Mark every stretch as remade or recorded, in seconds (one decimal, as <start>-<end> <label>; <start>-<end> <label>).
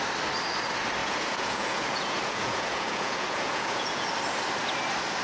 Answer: 0.0-1.0 recorded; 1.0-4.1 remade; 4.1-5.2 recorded